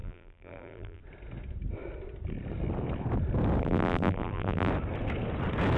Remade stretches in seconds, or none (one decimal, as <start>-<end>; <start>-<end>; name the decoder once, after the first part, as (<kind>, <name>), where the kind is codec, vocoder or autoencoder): 0.0-1.0 (vocoder, BigVGAN v2); 3.6-4.7